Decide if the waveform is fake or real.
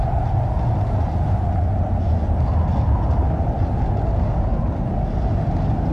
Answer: real